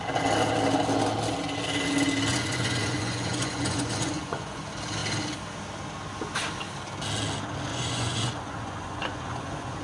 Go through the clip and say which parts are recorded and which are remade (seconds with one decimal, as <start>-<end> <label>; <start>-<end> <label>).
0.0-2.3 recorded; 2.3-4.6 remade; 4.6-7.7 recorded; 7.7-9.8 remade